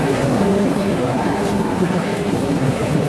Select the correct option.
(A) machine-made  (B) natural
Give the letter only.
A